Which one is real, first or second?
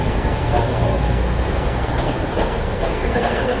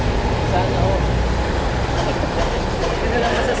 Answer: second